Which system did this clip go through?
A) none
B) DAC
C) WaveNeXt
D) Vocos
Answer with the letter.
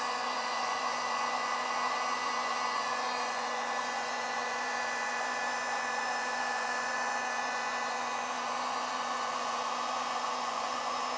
D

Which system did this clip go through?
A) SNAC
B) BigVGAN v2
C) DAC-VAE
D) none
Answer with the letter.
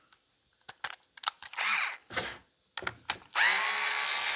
D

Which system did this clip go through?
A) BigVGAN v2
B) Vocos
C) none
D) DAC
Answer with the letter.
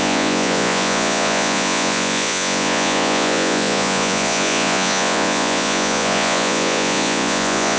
B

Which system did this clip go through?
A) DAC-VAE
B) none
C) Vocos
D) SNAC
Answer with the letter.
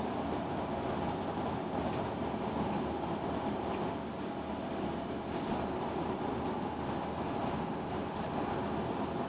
B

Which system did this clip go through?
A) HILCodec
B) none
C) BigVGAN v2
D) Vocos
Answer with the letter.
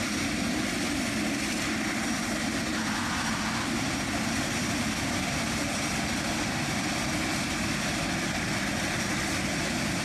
B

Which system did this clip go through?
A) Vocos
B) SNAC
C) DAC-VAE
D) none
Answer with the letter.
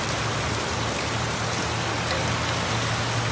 D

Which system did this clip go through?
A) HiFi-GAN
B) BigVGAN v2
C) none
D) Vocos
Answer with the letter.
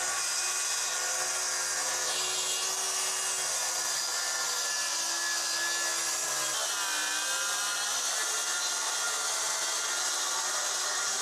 C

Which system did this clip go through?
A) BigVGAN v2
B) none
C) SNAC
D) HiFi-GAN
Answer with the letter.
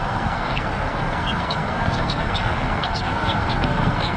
C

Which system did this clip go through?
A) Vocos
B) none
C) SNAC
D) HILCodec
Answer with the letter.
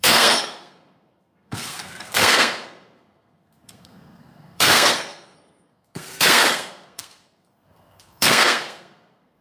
C